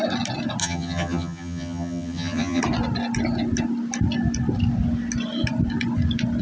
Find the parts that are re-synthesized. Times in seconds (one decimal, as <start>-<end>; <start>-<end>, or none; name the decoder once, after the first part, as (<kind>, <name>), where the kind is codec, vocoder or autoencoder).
0.6-2.6 (vocoder, HiFi-GAN)